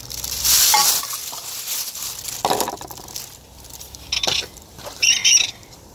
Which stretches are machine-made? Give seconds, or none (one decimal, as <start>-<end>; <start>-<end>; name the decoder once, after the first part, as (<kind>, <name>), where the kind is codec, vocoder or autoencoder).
0.0-0.8 (vocoder, BigVGAN v2); 4.3-5.9